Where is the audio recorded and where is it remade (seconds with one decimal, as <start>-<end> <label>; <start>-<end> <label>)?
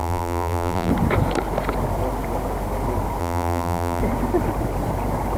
0.0-0.9 remade; 0.9-3.2 recorded; 3.2-4.0 remade; 4.0-5.4 recorded